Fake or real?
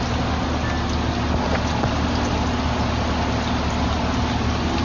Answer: real